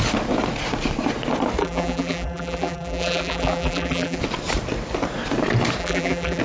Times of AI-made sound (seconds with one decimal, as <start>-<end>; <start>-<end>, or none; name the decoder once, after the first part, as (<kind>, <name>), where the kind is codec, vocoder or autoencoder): 1.6-4.2 (vocoder, BigVGAN v2); 5.8-6.4